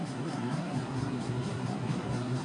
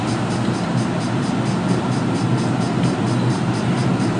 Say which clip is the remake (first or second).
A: first